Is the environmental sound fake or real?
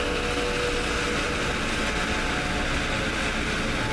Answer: real